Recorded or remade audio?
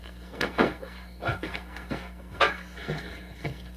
remade